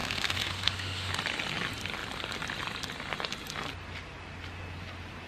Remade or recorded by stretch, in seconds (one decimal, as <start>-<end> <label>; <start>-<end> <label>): 0.0-1.1 remade; 1.1-5.3 recorded